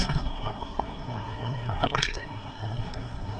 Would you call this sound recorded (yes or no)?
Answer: no